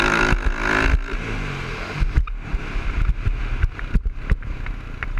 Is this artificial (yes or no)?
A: no